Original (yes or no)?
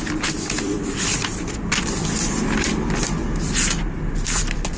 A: no